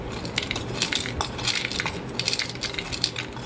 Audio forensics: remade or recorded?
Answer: recorded